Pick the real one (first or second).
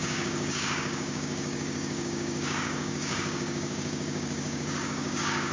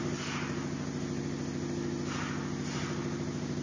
second